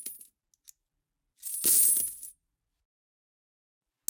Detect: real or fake real